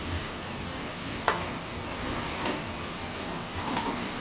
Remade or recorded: remade